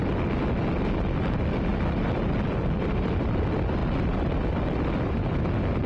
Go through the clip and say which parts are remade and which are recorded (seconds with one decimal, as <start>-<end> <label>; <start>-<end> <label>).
0.0-1.7 recorded; 1.7-3.4 remade; 3.4-3.8 recorded; 3.8-5.9 remade